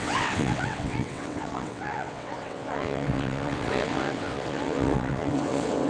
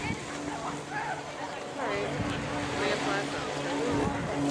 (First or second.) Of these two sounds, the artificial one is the first